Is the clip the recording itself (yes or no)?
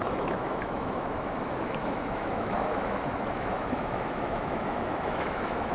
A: no